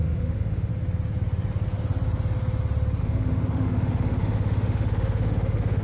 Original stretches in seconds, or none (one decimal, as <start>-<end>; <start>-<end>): 0.7-3.0